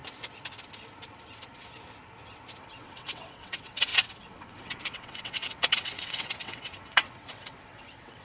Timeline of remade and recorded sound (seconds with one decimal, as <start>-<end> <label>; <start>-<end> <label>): 0.0-2.6 recorded; 2.6-8.2 remade